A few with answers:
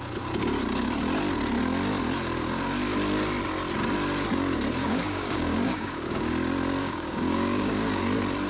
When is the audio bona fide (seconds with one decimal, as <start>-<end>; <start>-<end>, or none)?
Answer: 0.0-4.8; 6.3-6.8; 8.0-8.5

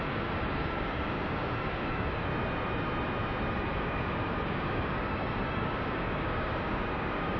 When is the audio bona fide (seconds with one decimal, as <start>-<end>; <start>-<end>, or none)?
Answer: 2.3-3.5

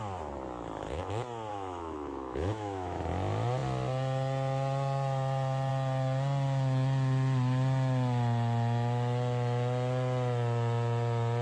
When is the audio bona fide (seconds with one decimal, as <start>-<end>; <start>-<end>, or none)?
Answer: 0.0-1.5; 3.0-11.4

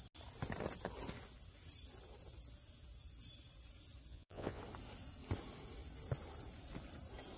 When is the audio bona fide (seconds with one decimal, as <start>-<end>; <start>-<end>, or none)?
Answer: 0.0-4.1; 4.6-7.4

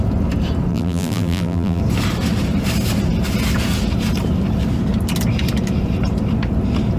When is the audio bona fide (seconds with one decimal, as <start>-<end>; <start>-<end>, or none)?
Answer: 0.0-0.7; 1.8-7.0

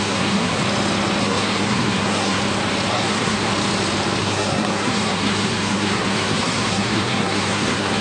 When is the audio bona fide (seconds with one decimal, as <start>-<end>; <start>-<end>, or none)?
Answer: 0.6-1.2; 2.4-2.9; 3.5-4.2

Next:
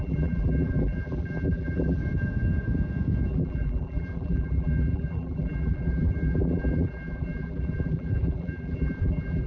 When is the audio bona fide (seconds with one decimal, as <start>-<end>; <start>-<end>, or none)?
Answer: 2.0-3.3

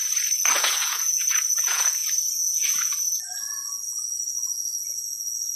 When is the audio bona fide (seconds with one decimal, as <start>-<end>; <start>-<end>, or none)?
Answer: 0.0-0.5